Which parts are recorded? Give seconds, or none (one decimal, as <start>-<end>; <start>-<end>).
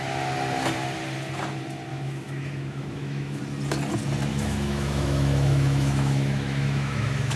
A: 0.0-1.9; 3.4-4.3